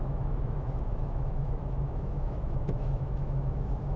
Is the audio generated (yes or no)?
yes